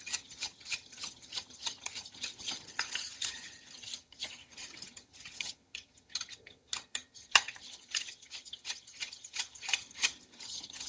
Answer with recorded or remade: remade